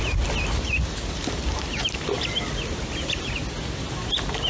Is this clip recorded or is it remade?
recorded